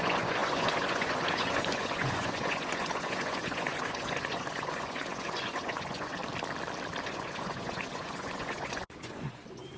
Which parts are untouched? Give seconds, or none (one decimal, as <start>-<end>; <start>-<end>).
6.2-7.0